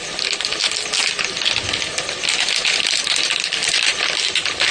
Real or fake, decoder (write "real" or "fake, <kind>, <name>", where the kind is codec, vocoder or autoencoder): real